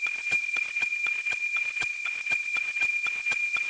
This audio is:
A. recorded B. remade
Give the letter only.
B